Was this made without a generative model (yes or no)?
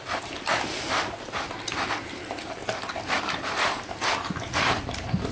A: yes